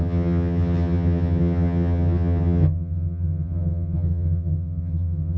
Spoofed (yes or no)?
yes